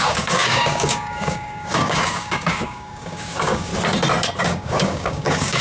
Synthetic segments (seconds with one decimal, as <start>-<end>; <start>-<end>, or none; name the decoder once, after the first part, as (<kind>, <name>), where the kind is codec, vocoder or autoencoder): 0.0-3.7 (codec, DAC); 4.4-5.6